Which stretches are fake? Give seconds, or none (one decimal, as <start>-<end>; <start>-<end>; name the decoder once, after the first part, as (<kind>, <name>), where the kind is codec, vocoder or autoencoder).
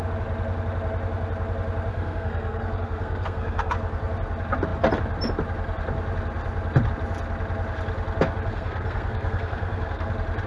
1.9-3.7 (codec, SNAC); 8.5-10.1